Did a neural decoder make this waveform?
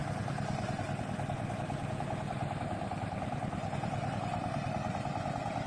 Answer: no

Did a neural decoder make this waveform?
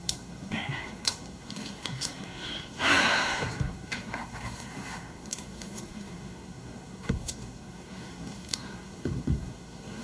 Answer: yes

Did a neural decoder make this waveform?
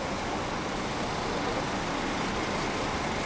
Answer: no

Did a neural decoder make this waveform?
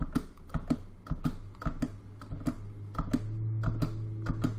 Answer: no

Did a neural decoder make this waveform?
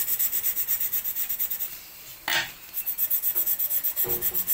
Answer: no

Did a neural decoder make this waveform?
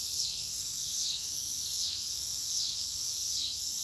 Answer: yes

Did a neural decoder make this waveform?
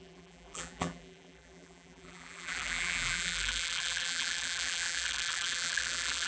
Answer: yes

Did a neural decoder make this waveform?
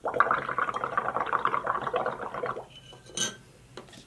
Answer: no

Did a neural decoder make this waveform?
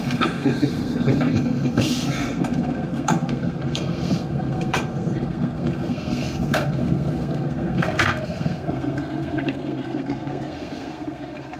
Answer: yes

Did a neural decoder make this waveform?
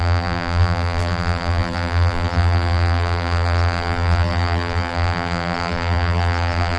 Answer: yes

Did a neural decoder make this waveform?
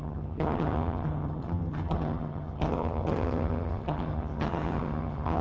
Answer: yes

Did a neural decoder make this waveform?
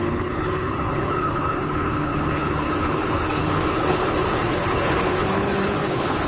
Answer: yes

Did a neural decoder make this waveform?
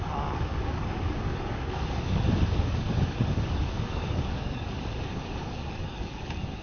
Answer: yes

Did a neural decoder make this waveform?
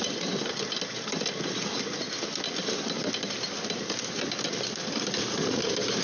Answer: no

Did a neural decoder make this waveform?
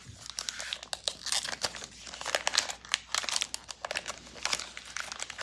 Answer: no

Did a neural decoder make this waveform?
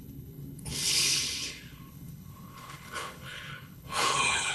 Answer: yes